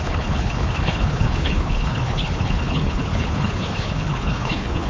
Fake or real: fake